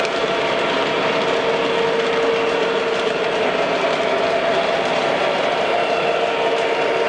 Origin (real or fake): real